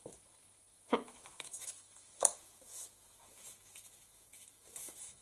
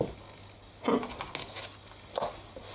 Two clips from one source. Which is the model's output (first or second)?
first